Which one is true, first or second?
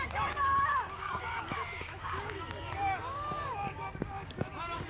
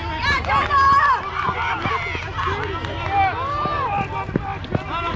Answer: second